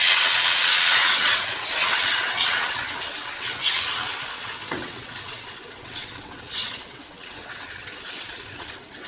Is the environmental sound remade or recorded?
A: remade